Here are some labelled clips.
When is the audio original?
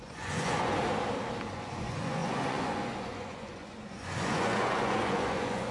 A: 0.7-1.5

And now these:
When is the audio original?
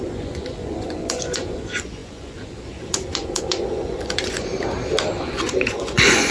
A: 4.5-5.2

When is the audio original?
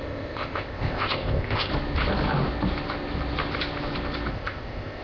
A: 1.7-4.3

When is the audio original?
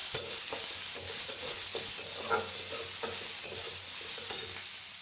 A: 0.0-1.2; 1.7-5.0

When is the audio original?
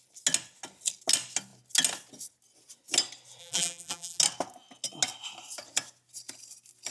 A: 0.0-3.4; 4.2-6.9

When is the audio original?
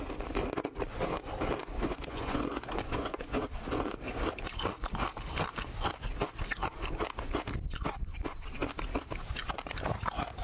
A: 0.0-1.6; 3.4-10.4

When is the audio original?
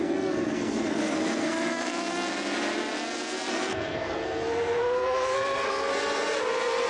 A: 2.3-3.5; 5.9-6.9